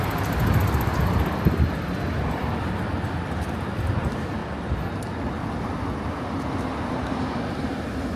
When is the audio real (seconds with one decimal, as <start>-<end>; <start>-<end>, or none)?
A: 0.0-8.2